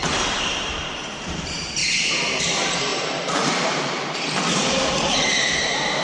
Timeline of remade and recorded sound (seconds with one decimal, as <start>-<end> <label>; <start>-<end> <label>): 0.0-1.8 remade; 1.8-2.4 recorded; 2.4-6.0 remade